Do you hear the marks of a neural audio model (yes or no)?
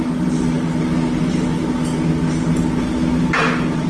no